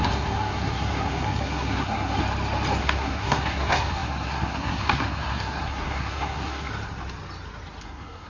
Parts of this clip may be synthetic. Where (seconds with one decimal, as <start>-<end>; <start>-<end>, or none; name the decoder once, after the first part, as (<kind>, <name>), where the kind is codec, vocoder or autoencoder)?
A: 0.0-2.2 (codec, SNAC); 2.8-6.7; 7.8-8.3